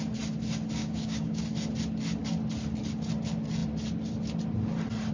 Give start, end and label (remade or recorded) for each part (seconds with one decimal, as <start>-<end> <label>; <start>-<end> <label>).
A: 0.0-0.8 recorded; 0.8-1.4 remade; 1.4-5.1 recorded